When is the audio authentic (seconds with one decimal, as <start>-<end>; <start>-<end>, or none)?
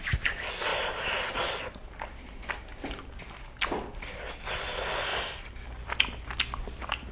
0.7-1.5; 2.7-3.9